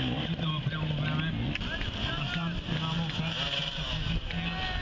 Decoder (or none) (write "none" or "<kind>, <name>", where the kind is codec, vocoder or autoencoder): none